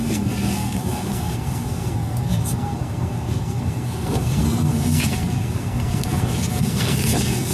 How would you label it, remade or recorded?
remade